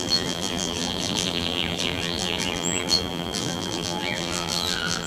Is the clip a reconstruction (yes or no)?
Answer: yes